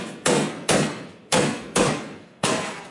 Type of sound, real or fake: fake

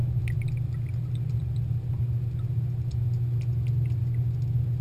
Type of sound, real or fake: real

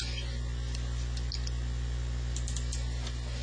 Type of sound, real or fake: real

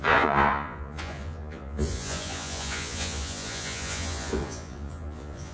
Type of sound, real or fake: fake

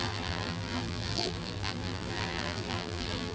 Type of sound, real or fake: fake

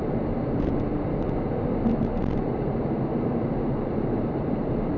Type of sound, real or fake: fake